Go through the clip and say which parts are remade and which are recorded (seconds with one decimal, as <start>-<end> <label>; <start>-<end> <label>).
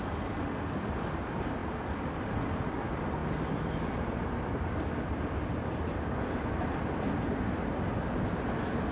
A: 0.0-8.9 recorded